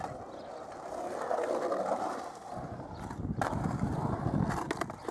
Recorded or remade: recorded